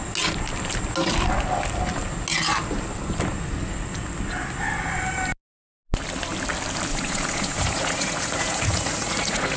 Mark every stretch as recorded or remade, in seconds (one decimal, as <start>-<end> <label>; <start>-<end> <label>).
0.0-6.9 recorded; 6.9-9.6 remade